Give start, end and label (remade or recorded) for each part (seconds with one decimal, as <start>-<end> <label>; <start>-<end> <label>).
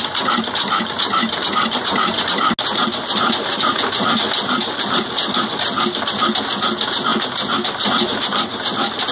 0.0-9.1 recorded